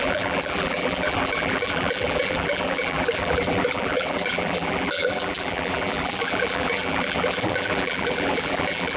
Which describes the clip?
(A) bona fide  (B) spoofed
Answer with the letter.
B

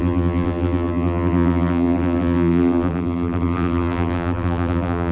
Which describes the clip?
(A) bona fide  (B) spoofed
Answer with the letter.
B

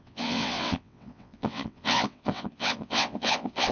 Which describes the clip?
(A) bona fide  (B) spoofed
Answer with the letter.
B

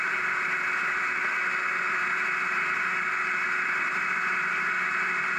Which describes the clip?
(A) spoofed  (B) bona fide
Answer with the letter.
B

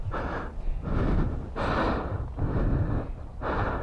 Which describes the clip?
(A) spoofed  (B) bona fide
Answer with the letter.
B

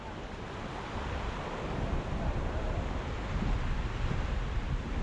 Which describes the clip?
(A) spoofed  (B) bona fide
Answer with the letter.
B